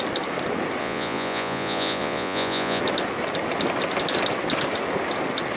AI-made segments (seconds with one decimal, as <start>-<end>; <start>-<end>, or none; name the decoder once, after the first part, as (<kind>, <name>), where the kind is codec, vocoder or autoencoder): 0.8-2.8 (vocoder, Vocos)